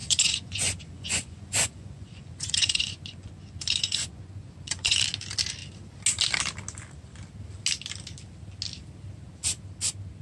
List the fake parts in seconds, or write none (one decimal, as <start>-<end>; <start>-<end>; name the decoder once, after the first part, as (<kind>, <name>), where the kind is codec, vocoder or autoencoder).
0.0-5.0 (vocoder, Vocos)